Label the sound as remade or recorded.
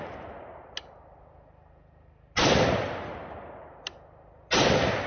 recorded